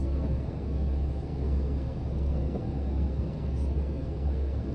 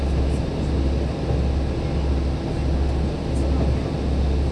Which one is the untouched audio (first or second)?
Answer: second